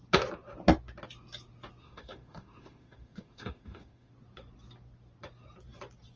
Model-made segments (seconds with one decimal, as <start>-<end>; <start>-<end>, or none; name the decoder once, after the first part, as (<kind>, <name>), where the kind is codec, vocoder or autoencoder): 1.8-4.1 (autoencoder, DAC-VAE)